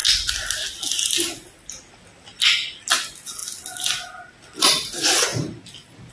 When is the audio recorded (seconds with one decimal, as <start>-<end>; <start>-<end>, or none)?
0.0-6.1